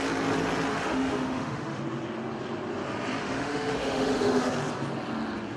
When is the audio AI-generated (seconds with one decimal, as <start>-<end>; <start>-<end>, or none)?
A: 0.7-1.8; 3.2-4.5